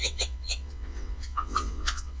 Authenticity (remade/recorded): remade